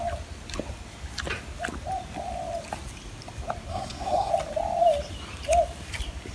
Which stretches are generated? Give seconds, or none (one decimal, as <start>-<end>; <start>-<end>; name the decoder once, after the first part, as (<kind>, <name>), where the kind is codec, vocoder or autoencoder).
3.7-4.3 (codec, SNAC)